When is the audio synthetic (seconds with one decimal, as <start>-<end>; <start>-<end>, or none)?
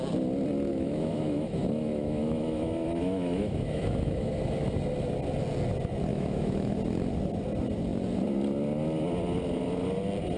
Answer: 0.7-4.3; 6.1-6.8